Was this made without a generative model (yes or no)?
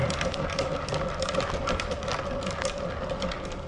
yes